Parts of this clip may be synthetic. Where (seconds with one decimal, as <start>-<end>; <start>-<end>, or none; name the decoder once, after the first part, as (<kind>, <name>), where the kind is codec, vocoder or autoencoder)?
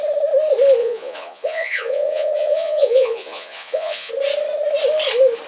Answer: 0.8-4.1 (vocoder, Vocos)